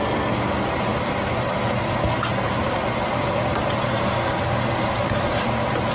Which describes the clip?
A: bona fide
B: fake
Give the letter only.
A